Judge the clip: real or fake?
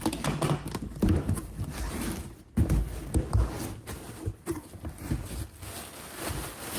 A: real